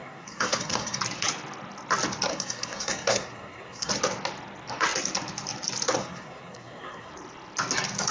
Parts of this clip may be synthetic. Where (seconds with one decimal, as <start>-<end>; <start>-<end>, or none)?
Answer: 0.0-1.0; 2.3-3.9; 6.0-7.1